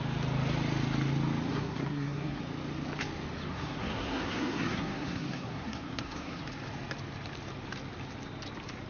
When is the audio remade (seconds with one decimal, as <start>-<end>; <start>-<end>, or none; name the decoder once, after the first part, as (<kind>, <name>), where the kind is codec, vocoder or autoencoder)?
1.5-2.4 (codec, SNAC); 3.5-6.4